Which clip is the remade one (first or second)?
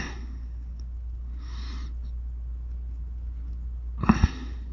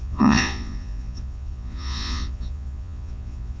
second